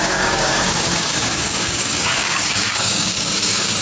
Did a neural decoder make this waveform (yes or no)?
yes